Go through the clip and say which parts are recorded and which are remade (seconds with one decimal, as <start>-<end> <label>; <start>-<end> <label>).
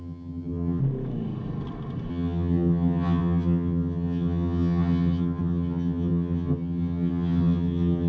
0.0-0.8 remade; 0.8-2.1 recorded; 2.1-8.1 remade